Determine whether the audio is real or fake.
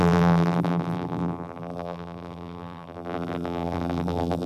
fake